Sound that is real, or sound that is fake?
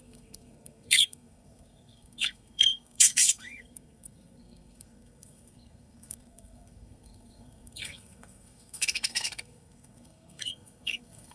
fake